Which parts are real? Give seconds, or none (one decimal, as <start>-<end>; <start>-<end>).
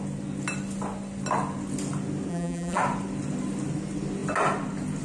0.0-2.3; 2.8-5.0